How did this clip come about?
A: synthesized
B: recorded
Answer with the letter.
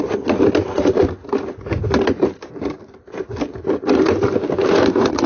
B